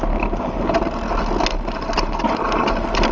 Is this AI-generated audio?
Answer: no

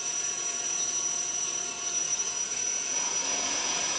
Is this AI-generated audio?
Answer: yes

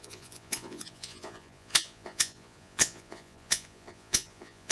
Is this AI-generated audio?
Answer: yes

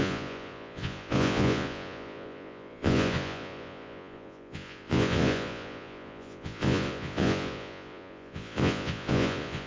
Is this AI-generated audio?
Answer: yes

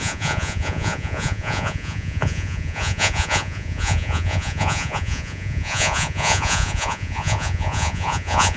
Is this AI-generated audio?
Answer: yes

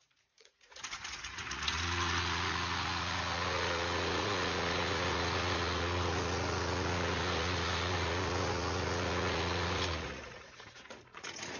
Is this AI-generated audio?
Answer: yes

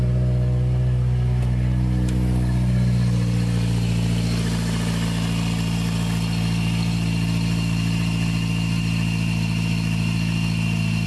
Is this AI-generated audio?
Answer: no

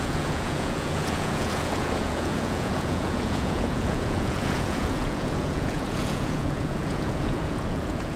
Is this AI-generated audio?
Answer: yes